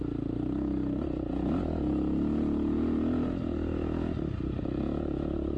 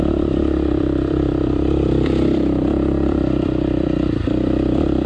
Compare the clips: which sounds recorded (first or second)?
first